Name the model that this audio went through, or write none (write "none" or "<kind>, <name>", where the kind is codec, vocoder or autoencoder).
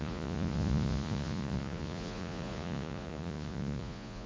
vocoder, Vocos